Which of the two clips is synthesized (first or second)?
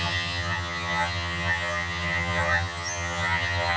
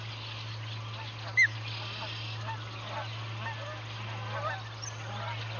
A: first